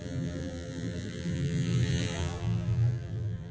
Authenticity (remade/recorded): remade